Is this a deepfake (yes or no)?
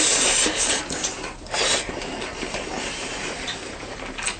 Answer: no